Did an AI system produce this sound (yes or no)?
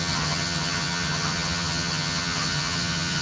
yes